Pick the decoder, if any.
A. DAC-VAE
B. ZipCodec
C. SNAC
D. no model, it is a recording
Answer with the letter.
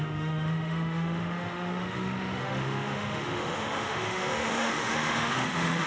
A